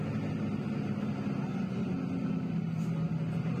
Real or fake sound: real